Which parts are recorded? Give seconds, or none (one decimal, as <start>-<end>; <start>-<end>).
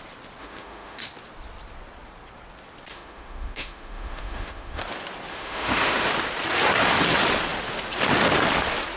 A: 0.0-0.4; 1.0-2.9; 4.8-5.3; 6.1-9.0